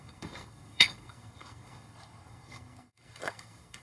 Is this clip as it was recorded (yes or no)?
no